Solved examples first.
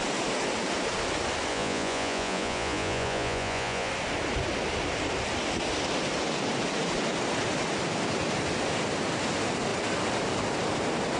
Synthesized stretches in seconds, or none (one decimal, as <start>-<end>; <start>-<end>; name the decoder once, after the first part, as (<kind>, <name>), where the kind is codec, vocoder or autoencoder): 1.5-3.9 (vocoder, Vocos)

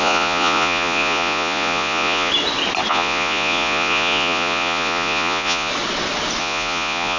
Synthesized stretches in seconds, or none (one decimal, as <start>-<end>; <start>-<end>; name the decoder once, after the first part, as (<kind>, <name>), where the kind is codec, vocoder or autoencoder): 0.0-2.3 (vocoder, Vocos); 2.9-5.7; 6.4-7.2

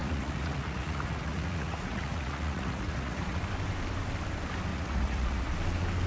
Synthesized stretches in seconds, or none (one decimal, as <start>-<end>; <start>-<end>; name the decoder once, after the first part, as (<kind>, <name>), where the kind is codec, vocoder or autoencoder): 0.0-3.4 (vocoder, Vocos); 4.7-5.5

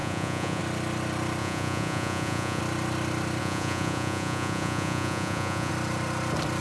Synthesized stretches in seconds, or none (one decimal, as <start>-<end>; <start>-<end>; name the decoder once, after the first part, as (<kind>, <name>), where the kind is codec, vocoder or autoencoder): 0.0-0.6 (vocoder, Vocos); 1.4-2.6; 3.4-5.7

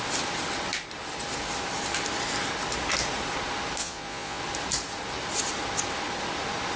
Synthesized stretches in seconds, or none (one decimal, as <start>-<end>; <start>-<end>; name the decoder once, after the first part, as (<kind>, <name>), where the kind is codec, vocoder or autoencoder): 3.8-4.4 (vocoder, Vocos)

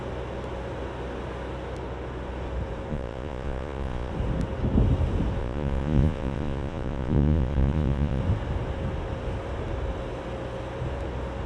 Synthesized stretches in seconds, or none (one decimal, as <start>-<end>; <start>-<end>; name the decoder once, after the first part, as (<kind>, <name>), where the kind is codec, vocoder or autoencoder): 2.9-4.1 (vocoder, Vocos); 5.4-8.2